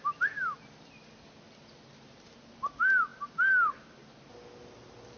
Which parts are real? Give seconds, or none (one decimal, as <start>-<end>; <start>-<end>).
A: 0.0-5.2